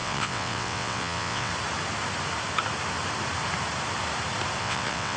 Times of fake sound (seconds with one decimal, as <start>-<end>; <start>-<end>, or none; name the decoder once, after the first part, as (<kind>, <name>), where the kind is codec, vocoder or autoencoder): 0.0-1.5 (vocoder, WaveNeXt); 4.6-5.2